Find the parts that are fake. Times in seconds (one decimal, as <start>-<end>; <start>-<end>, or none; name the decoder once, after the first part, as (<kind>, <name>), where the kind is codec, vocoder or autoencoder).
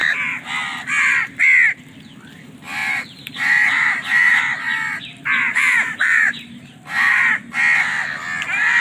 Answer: 0.0-0.5 (vocoder, BigVGAN v2); 2.8-7.4